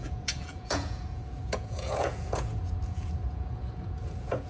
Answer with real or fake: fake